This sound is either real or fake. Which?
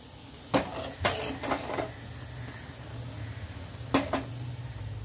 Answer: real